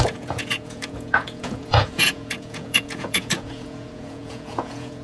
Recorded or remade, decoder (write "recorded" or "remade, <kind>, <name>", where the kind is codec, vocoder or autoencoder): remade, vocoder, Vocos